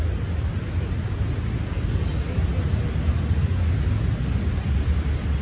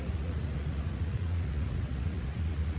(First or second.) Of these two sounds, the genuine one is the first